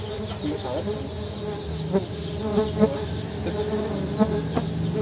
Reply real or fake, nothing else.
real